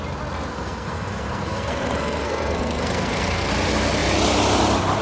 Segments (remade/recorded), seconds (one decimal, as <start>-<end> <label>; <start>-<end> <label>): 0.0-0.5 recorded; 0.5-3.5 remade; 3.5-5.0 recorded